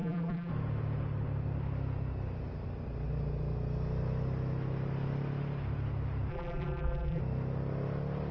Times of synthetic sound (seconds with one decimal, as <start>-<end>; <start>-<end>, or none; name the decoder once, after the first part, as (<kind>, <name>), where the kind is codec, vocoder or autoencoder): 0.0-0.5 (vocoder, BigVGAN v2); 6.3-7.2